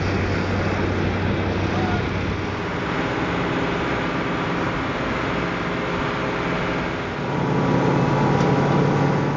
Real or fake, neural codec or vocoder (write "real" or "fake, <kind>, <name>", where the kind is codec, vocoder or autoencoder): real